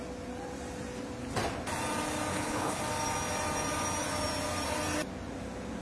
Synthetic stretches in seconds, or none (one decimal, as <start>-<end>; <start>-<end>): 2.3-2.8